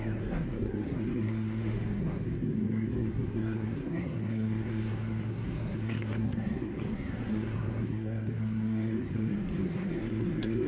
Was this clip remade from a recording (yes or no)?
yes